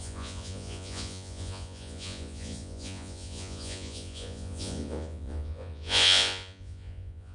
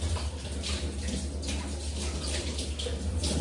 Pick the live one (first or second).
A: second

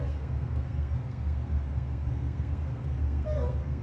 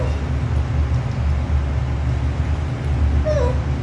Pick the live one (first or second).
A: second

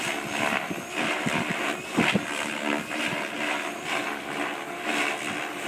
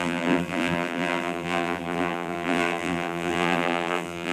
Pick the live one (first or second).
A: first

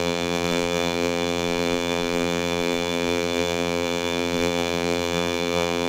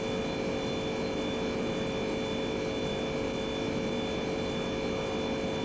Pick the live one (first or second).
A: second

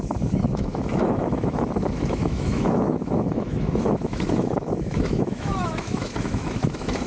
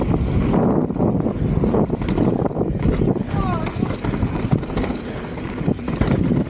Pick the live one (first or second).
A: second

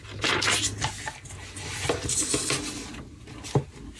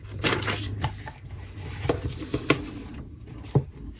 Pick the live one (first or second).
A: first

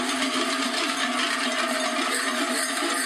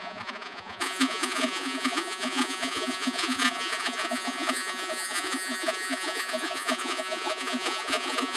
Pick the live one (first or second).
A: first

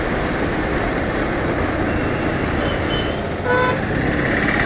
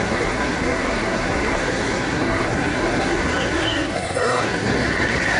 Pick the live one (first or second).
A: first